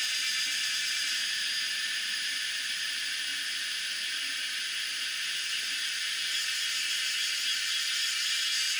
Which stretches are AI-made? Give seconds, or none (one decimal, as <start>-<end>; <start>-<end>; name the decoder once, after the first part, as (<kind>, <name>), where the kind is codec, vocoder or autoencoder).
0.0-3.3 (vocoder, BigVGAN v2); 3.9-8.8